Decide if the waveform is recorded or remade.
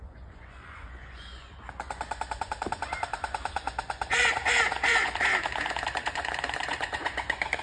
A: remade